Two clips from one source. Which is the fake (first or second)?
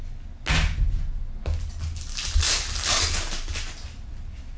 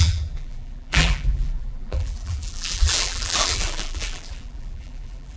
second